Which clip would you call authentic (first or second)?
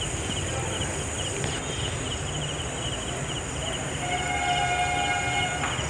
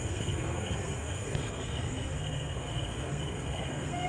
first